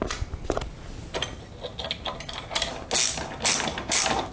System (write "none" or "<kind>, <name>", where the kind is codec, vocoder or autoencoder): none